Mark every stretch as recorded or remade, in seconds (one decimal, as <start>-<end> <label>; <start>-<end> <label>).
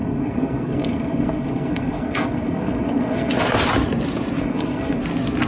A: 0.0-3.3 remade; 3.3-4.4 recorded; 4.4-5.0 remade; 5.0-5.5 recorded